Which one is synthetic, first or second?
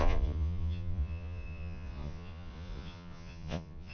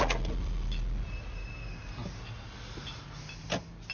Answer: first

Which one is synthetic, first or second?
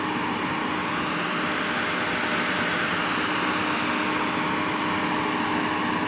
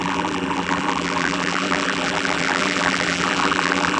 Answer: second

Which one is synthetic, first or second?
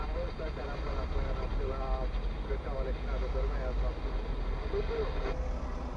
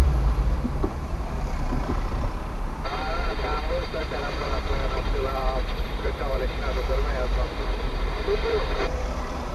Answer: second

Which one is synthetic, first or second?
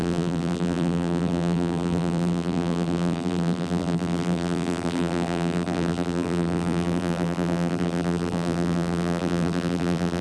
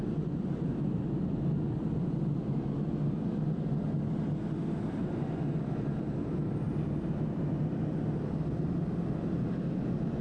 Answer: first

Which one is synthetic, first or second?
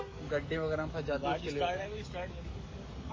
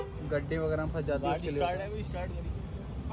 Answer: first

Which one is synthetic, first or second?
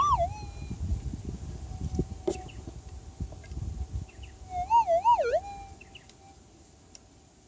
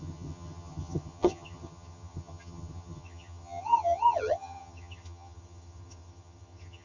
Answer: second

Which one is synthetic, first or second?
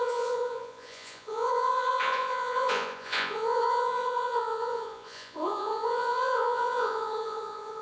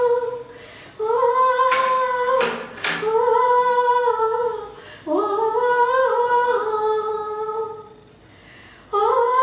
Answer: first